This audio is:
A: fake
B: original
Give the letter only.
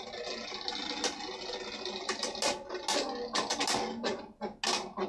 B